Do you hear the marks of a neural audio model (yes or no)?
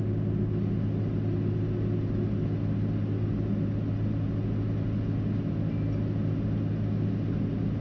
no